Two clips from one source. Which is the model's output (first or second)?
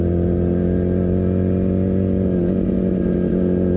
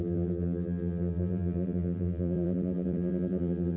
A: second